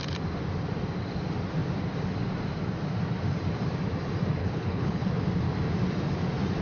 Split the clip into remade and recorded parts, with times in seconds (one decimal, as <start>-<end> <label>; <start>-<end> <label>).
0.0-4.4 recorded; 4.4-5.1 remade; 5.1-6.6 recorded

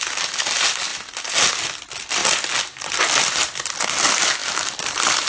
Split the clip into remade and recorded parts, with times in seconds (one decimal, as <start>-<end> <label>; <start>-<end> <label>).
0.0-0.9 recorded; 0.9-1.5 remade; 1.5-4.4 recorded; 4.4-5.3 remade